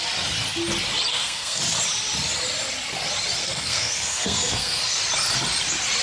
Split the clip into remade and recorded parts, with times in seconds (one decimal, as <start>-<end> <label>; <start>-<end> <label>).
0.0-1.1 recorded; 1.1-1.6 remade; 1.6-3.4 recorded; 3.4-5.0 remade; 5.0-6.0 recorded